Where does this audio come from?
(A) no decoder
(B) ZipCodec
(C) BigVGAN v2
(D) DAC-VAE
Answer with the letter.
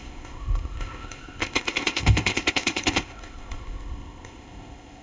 B